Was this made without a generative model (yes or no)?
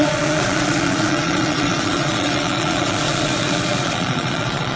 no